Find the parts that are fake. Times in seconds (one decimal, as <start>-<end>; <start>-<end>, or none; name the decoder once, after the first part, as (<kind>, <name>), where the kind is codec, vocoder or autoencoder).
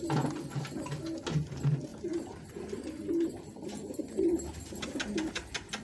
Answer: 1.9-2.5 (vocoder, BigVGAN v2)